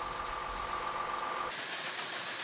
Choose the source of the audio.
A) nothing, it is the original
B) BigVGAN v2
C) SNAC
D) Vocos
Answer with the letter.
A